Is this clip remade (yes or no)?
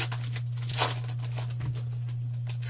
no